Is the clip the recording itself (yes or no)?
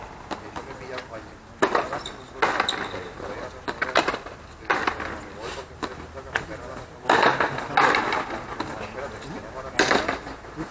yes